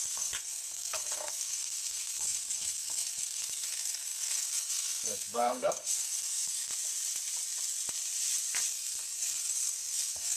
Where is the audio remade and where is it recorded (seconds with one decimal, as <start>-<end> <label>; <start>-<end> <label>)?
0.0-6.7 remade; 6.7-8.7 recorded; 8.7-10.4 remade